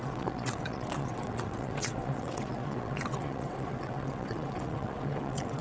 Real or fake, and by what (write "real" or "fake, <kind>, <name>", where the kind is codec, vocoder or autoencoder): fake, vocoder, WaveNeXt